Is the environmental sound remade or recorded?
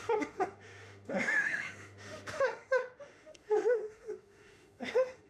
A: remade